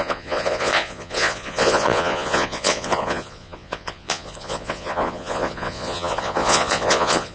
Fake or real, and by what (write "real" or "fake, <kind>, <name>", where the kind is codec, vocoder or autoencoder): fake, vocoder, Vocos